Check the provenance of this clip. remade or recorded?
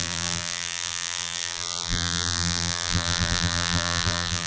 remade